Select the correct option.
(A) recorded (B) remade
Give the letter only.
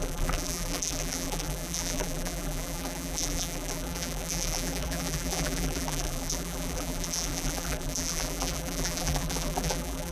B